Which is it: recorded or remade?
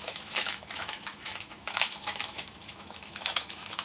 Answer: remade